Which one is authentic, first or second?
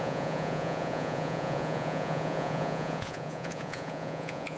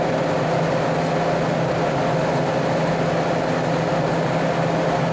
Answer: second